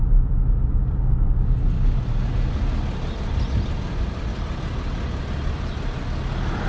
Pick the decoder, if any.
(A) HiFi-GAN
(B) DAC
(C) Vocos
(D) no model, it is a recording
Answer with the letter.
D